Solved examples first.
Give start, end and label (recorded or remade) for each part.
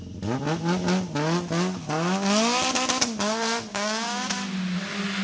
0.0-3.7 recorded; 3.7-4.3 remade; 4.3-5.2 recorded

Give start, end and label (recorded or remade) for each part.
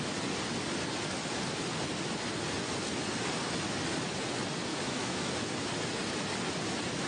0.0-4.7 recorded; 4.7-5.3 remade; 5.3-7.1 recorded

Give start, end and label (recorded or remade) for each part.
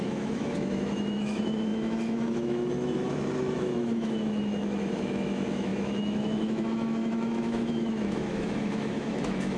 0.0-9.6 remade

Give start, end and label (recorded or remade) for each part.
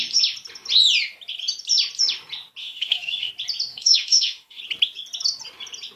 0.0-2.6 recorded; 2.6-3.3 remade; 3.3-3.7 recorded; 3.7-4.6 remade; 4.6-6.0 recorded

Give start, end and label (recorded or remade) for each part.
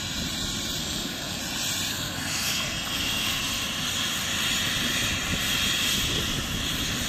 0.0-0.8 recorded; 0.8-1.4 remade; 1.4-1.9 recorded; 1.9-3.4 remade; 3.4-7.1 recorded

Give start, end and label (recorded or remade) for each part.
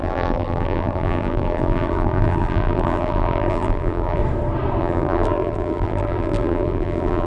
0.0-4.2 remade; 4.2-4.8 recorded; 4.8-7.3 remade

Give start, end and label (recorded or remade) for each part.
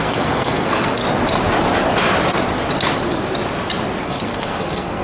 0.0-1.0 remade; 1.0-4.0 recorded; 4.0-5.0 remade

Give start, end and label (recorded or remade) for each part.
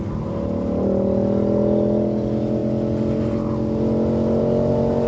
0.0-5.1 recorded